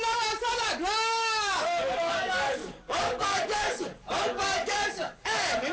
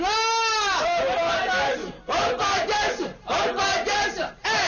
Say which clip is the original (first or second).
second